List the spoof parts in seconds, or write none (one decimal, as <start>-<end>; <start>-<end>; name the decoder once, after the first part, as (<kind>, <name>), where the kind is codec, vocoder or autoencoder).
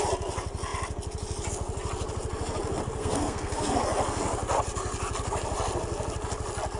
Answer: 3.0-3.7 (codec, SNAC)